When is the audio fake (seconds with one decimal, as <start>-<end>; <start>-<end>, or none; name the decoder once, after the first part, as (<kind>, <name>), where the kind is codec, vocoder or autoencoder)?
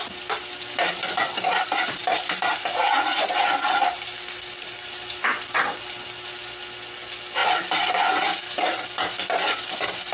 0.0-10.1 (vocoder, BigVGAN v2)